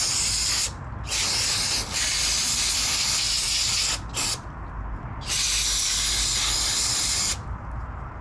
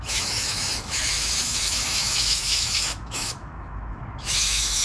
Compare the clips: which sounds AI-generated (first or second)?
second